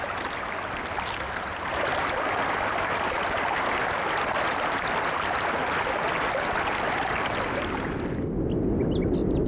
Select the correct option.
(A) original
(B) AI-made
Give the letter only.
A